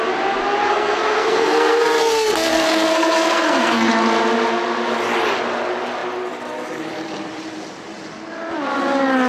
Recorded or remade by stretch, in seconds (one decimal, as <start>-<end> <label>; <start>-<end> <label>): 0.0-0.6 recorded; 0.6-3.9 remade; 3.9-9.3 recorded